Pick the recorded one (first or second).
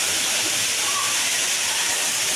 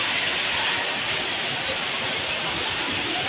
second